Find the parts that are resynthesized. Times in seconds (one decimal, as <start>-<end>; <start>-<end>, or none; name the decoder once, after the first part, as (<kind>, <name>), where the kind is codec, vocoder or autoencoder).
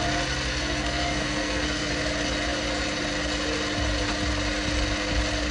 0.5-1.9 (codec, SNAC)